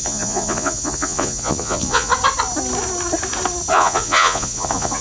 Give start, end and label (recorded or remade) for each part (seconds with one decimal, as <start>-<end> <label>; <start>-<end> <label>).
0.0-2.1 remade; 2.1-3.7 recorded; 3.7-5.0 remade